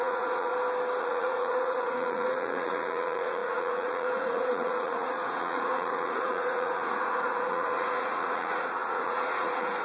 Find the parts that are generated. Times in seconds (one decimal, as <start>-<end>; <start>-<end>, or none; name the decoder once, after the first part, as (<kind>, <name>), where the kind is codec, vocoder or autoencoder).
0.0-0.5 (vocoder, Vocos); 1.0-9.8